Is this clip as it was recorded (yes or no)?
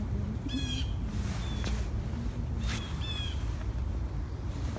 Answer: yes